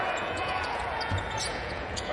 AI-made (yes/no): yes